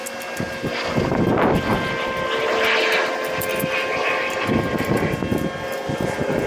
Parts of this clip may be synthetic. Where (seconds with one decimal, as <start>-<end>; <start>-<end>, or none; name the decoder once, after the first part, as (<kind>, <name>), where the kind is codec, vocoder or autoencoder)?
none